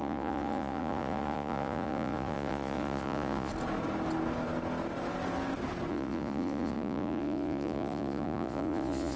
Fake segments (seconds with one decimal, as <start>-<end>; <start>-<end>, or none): 0.0-3.5; 5.9-9.2